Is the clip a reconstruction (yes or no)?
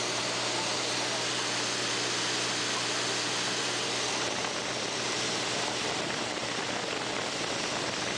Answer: no